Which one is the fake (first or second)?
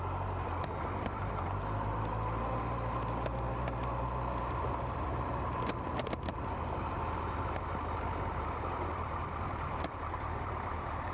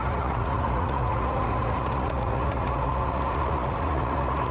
second